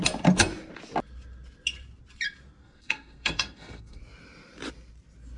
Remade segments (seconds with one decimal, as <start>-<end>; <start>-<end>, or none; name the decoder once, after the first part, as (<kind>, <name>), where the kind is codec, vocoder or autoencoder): 2.6-4.0 (codec, SNAC)